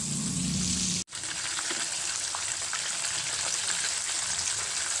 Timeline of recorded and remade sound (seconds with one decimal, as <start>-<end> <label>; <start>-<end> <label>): 0.0-5.0 recorded

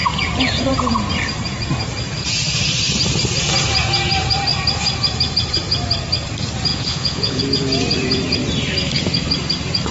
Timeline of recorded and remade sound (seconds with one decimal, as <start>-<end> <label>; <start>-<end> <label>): 0.0-6.7 recorded; 6.7-7.4 remade; 7.4-9.9 recorded

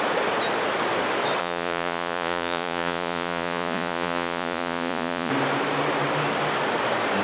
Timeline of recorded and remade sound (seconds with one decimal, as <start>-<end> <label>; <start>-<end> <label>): 0.0-1.4 recorded; 1.4-5.3 remade; 5.3-7.2 recorded

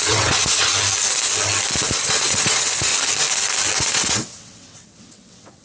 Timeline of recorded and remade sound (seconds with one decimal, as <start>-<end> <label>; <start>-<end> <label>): 0.0-0.7 remade; 0.7-1.9 recorded; 1.9-2.9 remade; 2.9-3.8 recorded; 3.8-5.6 remade

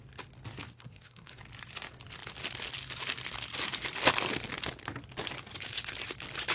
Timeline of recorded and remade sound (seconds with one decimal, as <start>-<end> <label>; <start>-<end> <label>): 0.0-0.7 recorded; 0.7-1.4 remade; 1.4-6.5 recorded

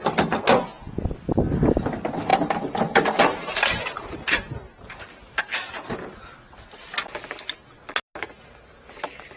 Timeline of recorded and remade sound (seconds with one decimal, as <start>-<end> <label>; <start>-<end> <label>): 0.0-2.3 recorded; 2.3-5.4 remade; 5.4-9.4 recorded

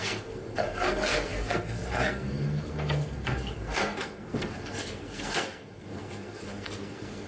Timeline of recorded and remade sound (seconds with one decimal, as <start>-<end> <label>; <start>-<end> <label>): 0.0-7.3 remade